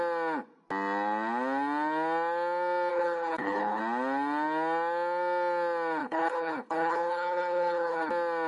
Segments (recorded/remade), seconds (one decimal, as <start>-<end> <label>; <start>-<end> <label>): 0.0-2.9 recorded; 2.9-3.8 remade; 3.8-6.0 recorded; 6.0-8.1 remade; 8.1-8.5 recorded

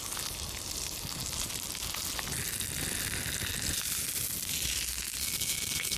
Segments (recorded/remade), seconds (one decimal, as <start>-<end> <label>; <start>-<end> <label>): 0.0-5.2 recorded; 5.2-6.0 remade

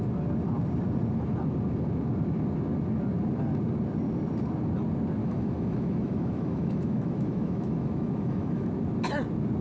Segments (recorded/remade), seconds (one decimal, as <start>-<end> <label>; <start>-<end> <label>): 0.0-5.2 recorded; 5.2-8.7 remade; 8.7-9.6 recorded

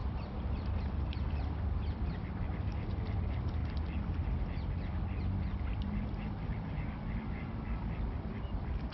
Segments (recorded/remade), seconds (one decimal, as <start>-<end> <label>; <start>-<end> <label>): 0.0-3.6 remade; 3.6-5.7 recorded; 5.7-8.9 remade

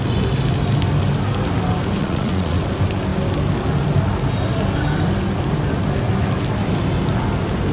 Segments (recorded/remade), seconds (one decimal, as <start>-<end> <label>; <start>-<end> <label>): 0.0-2.0 recorded; 2.0-2.6 remade; 2.6-7.7 recorded